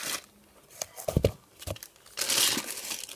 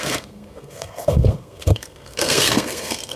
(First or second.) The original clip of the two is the first